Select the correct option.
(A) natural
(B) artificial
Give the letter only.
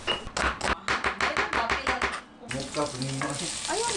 A